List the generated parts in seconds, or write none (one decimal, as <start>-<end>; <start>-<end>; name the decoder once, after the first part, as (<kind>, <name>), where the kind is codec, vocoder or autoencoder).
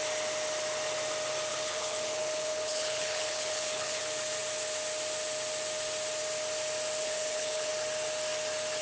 1.5-4.0 (codec, HILCodec); 7.0-7.7